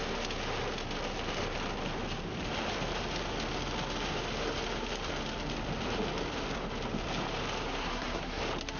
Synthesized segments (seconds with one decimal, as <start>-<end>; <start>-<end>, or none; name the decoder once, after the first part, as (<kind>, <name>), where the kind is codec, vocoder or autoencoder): 7.8-8.4 (codec, SNAC)